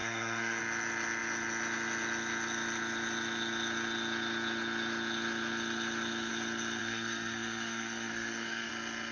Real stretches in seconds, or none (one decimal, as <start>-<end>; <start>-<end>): 0.6-6.8; 8.7-9.1